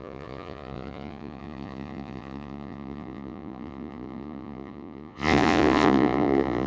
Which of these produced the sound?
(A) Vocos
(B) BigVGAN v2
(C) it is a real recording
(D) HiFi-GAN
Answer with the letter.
A